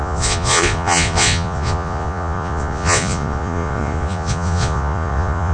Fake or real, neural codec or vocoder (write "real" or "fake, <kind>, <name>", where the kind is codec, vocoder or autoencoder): fake, vocoder, Vocos